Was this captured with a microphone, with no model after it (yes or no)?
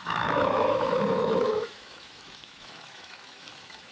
no